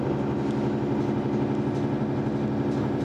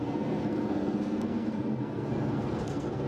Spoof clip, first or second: second